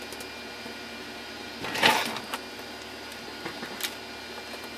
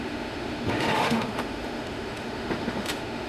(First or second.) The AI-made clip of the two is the second